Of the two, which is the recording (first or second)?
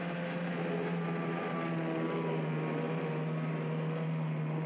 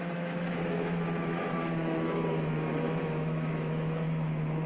first